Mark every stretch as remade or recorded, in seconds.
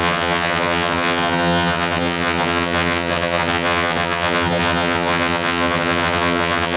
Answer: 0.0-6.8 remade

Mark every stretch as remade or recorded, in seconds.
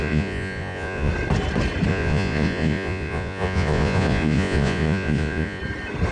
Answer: 0.0-1.1 remade; 1.1-1.9 recorded; 1.9-5.6 remade; 5.6-6.1 recorded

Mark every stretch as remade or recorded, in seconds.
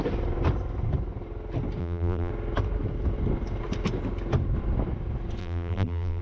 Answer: 0.0-1.8 recorded; 1.8-2.3 remade; 2.3-5.4 recorded; 5.4-6.2 remade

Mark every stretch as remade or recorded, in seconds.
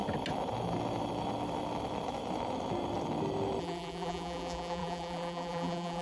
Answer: 0.0-3.6 recorded; 3.6-6.0 remade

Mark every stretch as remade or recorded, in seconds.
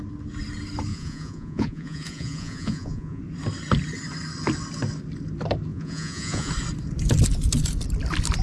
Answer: 0.0-0.9 recorded; 0.9-3.2 remade; 3.2-5.7 recorded; 5.7-6.5 remade; 6.5-8.4 recorded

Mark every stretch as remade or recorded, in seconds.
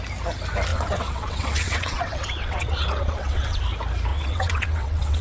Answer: 0.0-0.7 recorded; 0.7-3.6 remade; 3.6-4.1 recorded; 4.1-5.2 remade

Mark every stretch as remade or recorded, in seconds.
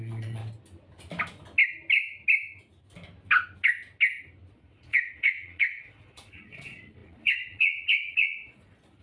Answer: 0.0-0.4 remade; 0.4-4.5 recorded; 4.5-9.0 remade